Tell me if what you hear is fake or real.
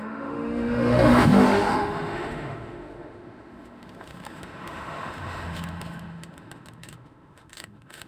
fake